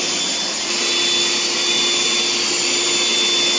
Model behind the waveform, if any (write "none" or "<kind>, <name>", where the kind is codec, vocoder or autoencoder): none